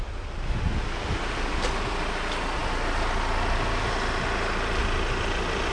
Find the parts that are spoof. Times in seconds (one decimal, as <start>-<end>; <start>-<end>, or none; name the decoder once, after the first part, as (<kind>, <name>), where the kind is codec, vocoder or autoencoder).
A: none